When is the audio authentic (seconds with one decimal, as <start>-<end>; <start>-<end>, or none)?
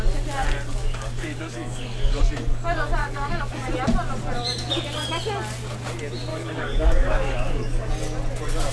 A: 0.0-0.7; 2.2-3.0; 3.7-6.3; 7.9-8.7